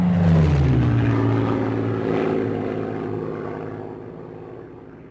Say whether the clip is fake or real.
real